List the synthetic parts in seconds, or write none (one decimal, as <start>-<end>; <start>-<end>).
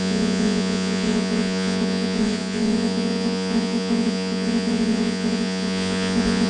0.0-6.5